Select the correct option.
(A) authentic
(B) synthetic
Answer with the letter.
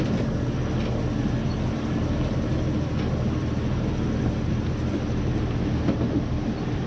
A